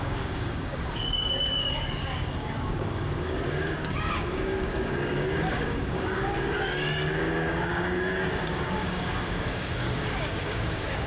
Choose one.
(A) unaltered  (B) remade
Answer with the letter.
B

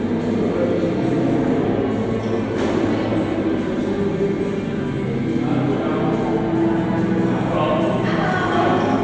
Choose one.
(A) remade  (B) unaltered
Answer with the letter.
B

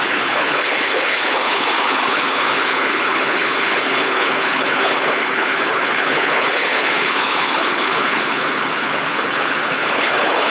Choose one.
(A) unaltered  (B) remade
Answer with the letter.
B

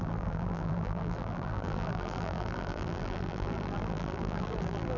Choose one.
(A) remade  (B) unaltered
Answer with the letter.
A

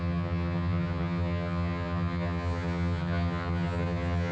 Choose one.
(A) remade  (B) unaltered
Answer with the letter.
A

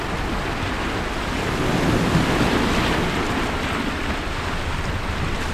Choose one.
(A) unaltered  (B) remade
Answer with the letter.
A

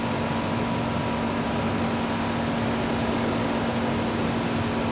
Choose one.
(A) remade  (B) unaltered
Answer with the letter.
B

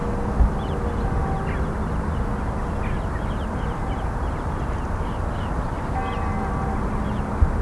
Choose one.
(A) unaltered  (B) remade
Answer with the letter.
A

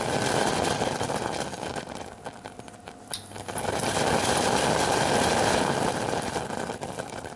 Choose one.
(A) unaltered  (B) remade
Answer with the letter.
A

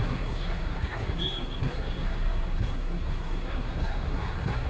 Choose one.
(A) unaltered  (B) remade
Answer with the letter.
B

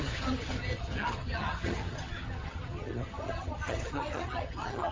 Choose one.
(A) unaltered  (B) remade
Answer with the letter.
B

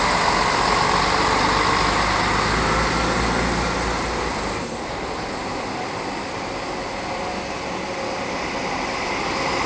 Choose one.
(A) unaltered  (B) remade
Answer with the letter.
A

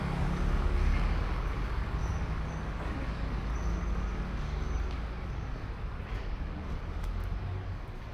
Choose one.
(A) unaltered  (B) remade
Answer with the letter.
B